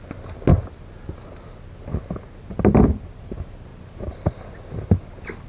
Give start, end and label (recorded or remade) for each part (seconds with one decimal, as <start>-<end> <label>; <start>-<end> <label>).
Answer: 0.0-5.5 recorded